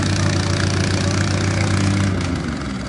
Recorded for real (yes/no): yes